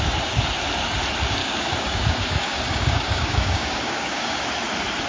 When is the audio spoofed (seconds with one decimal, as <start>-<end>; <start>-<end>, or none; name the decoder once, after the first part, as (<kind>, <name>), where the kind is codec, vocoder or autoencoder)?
1.4-4.5 (codec, DAC)